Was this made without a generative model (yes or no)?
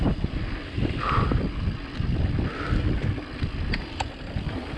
yes